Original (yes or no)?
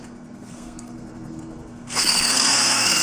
no